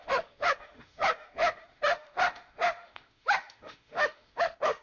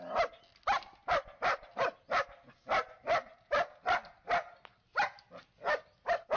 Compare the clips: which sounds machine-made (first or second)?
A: first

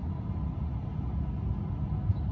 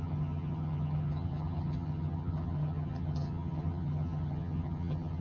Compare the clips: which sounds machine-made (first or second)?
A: second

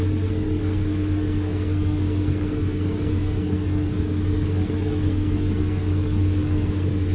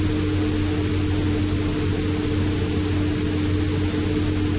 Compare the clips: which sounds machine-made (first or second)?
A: first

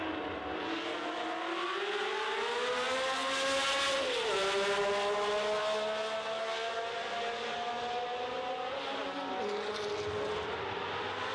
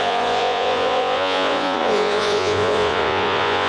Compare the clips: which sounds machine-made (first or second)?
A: second